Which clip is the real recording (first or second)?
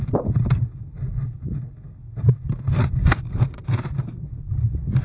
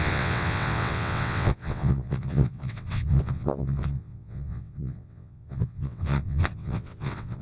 first